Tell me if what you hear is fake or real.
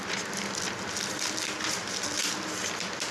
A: real